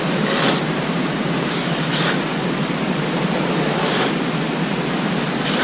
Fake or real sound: real